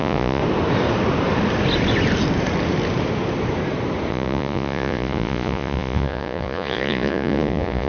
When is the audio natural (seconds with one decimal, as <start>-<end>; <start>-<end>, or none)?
0.4-4.1